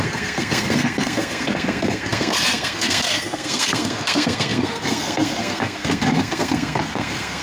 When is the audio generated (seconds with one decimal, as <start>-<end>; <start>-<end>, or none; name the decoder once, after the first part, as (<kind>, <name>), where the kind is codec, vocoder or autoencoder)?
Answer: 0.0-7.4 (codec, SNAC)